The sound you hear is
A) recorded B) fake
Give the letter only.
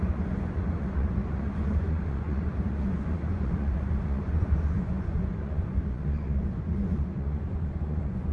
B